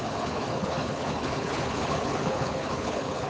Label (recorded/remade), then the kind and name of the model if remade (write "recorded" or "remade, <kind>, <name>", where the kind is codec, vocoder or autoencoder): remade, codec, HILCodec